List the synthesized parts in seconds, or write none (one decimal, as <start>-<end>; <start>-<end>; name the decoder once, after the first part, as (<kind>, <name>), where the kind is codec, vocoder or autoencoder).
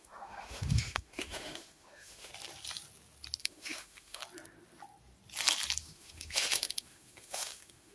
0.0-2.3 (autoencoder, DAC-VAE); 3.4-4.2; 5.8-7.9